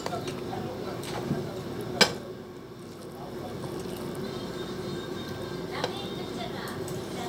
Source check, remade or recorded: recorded